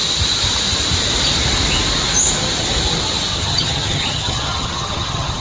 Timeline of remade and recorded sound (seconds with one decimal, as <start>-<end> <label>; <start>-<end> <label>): 0.0-3.3 recorded; 3.3-5.4 remade